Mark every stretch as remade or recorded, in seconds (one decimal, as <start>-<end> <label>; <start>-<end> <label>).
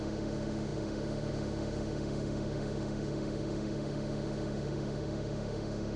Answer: 0.0-6.0 remade